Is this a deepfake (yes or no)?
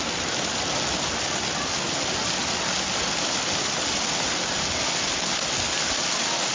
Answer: no